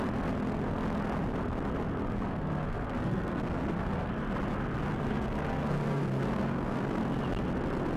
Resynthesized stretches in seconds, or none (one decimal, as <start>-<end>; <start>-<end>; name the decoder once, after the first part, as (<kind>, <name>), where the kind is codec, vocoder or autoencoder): 2.3-4.1 (codec, SNAC); 4.9-7.0